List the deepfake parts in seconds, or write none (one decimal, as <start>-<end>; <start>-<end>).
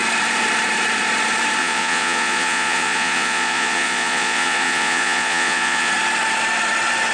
1.6-5.9